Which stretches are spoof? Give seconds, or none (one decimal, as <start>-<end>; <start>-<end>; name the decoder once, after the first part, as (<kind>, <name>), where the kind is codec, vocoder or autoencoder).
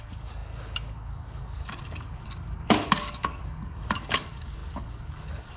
0.0-5.6 (codec, DAC)